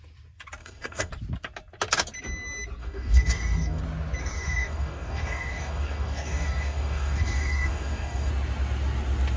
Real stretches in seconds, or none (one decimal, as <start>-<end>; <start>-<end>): 0.0-0.6; 1.1-2.8; 3.8-4.2; 8.3-9.4